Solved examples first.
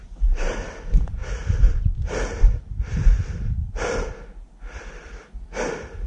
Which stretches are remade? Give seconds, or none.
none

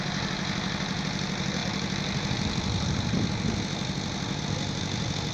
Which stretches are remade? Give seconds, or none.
none